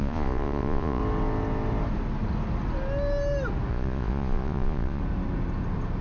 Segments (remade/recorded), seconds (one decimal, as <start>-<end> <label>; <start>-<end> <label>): 0.0-1.0 remade; 1.0-3.7 recorded; 3.7-5.0 remade; 5.0-6.0 recorded